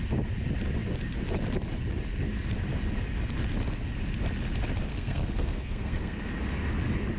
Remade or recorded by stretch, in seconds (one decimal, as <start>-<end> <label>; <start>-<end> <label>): 0.0-4.9 recorded; 4.9-6.3 remade; 6.3-7.2 recorded

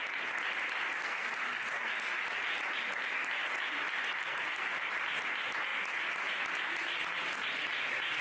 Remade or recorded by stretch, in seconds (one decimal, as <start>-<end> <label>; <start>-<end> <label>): 0.0-1.0 recorded; 1.0-2.2 remade; 2.2-4.2 recorded; 4.2-4.9 remade; 4.9-8.2 recorded

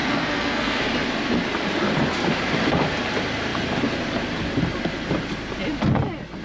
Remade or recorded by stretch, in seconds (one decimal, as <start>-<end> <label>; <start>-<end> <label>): 0.0-0.8 remade; 0.8-6.4 recorded